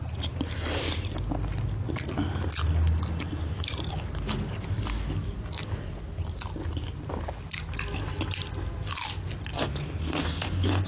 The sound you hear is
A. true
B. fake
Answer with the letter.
A